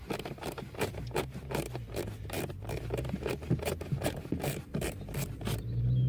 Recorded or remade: remade